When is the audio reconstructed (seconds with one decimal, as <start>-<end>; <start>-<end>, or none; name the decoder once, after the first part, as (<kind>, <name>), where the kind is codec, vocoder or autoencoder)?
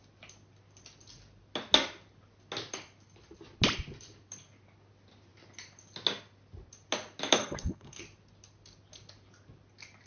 7.4-8.0 (codec, SNAC)